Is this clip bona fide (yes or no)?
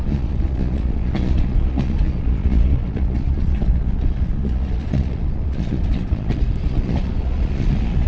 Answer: no